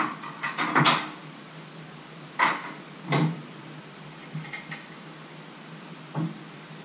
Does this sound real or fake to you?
real